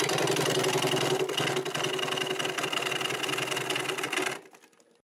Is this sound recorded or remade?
recorded